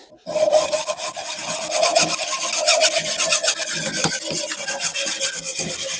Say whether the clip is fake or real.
real